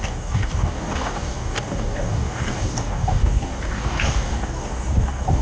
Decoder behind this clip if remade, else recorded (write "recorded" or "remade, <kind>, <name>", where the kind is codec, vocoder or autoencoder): remade, codec, DAC